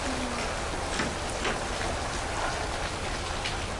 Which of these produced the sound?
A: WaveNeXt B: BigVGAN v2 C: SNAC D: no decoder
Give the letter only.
D